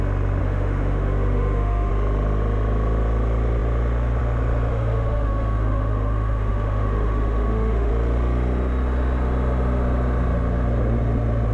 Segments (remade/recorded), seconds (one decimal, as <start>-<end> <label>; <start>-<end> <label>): 0.0-0.4 recorded; 0.4-1.9 remade; 1.9-4.7 recorded; 4.7-7.9 remade; 7.9-11.5 recorded